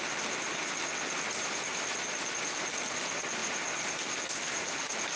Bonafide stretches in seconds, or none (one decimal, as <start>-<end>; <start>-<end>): 0.0-5.2